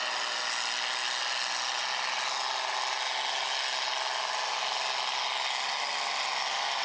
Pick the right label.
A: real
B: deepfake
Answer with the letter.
A